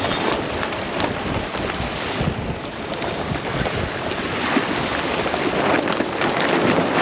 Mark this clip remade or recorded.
recorded